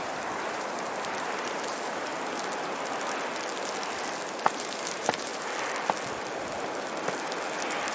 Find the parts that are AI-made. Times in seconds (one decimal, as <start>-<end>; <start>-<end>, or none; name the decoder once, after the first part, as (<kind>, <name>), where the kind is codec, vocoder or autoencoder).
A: 0.0-2.1 (vocoder, BigVGAN v2); 4.5-5.3